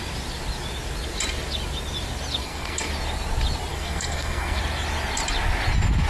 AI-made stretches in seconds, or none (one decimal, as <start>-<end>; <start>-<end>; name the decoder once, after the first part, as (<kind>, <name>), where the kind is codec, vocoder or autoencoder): 2.4-2.9 (codec, SNAC); 3.7-4.6